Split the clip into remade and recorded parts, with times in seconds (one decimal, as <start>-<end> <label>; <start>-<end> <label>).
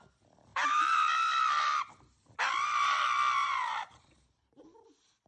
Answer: 0.0-0.5 recorded; 0.5-1.1 remade; 1.1-3.4 recorded; 3.4-4.6 remade; 4.6-5.3 recorded